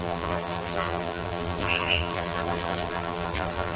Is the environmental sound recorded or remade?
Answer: remade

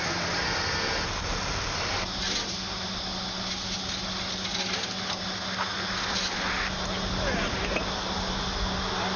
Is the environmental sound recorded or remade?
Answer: recorded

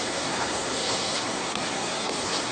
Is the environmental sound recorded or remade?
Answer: remade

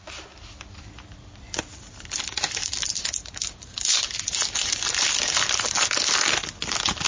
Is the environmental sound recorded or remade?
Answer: recorded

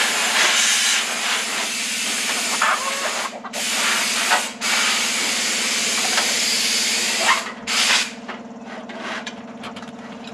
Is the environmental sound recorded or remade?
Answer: recorded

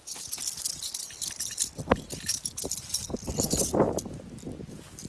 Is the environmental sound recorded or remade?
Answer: recorded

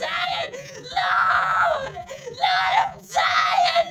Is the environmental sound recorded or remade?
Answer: remade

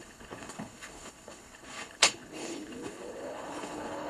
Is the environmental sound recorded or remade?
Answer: remade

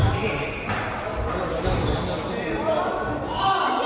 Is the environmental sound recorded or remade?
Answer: recorded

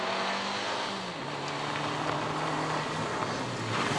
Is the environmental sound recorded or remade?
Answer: recorded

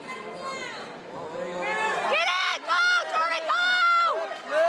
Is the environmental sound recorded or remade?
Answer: recorded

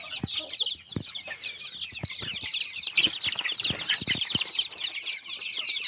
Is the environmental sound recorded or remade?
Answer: recorded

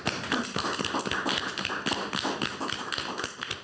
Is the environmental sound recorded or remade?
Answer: recorded